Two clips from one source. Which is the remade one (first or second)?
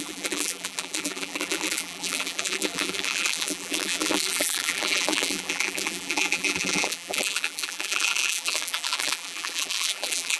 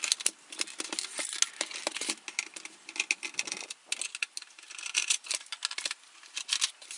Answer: first